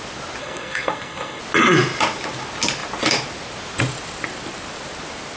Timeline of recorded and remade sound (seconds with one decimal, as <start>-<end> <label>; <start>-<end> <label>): 0.0-0.4 recorded; 0.4-1.4 remade; 1.4-5.4 recorded